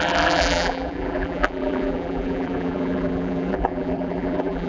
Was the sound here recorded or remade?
remade